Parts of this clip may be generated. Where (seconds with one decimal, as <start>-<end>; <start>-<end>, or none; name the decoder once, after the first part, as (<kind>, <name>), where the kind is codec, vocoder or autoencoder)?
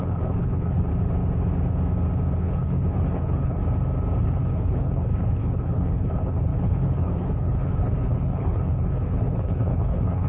0.0-0.9 (codec, HILCodec); 2.4-3.6; 4.2-10.3